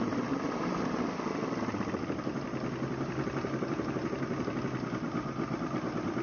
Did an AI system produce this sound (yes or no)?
no